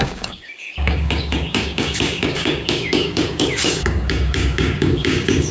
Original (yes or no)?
no